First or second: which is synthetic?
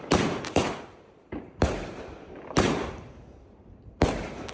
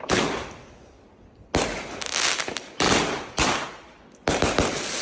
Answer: first